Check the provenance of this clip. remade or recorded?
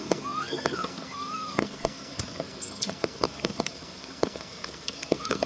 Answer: remade